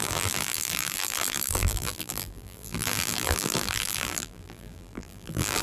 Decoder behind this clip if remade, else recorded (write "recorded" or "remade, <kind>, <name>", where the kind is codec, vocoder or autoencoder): remade, vocoder, BigVGAN v2